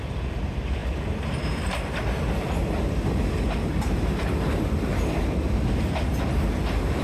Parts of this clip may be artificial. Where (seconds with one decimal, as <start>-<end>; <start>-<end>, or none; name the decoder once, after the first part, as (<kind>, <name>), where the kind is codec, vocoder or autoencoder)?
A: none